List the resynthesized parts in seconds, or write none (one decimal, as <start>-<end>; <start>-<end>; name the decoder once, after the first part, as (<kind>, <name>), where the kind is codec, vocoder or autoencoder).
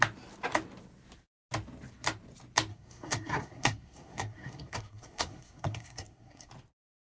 2.7-6.5 (codec, SNAC)